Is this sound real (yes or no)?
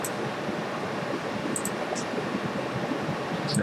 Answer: yes